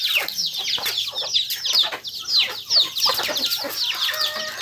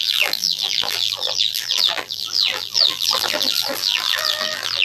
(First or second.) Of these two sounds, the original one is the first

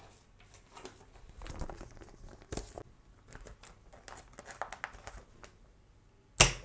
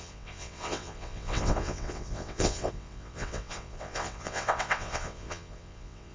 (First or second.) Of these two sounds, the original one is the first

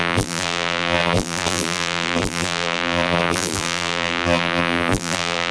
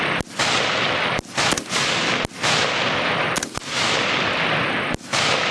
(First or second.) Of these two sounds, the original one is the second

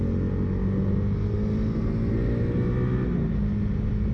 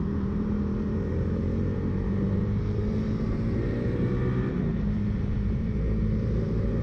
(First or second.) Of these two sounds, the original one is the first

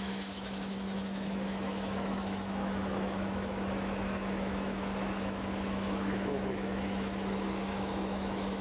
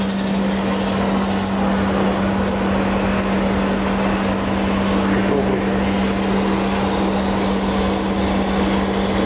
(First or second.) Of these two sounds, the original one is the second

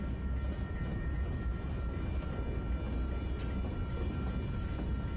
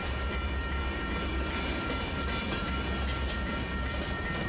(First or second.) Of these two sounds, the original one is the first